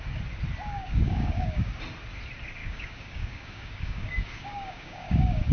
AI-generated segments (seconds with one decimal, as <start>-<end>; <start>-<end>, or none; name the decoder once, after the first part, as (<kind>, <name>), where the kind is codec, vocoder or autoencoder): 0.6-1.7 (codec, DAC); 2.6-5.5